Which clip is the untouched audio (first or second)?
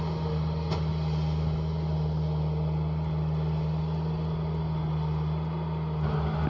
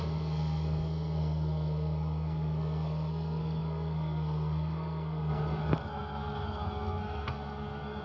first